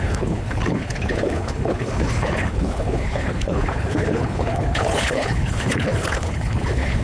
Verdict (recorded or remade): remade